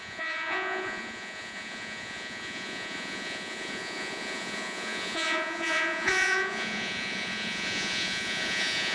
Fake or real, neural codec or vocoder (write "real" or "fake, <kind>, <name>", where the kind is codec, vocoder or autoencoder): fake, vocoder, Vocos